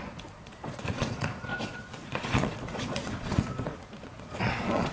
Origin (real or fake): fake